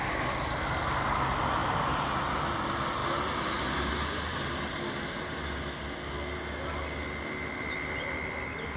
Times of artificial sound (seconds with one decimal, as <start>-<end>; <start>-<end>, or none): none